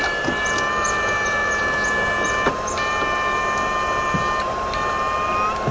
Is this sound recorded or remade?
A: recorded